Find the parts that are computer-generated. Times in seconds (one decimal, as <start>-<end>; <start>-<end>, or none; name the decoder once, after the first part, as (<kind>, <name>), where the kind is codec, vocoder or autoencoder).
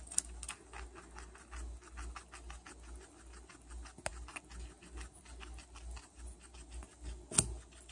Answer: none